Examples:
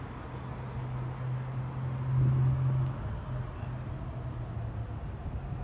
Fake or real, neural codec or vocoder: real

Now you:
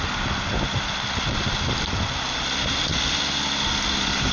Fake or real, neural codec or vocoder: real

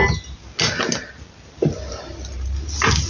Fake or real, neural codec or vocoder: real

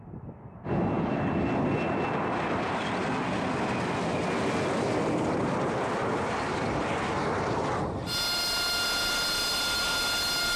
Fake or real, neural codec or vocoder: real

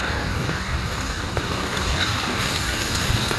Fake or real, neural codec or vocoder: fake, codec, DAC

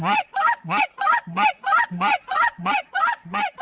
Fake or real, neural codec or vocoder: fake, vocoder, Vocos